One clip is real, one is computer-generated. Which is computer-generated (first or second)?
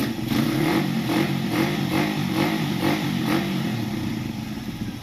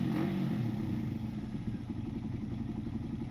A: first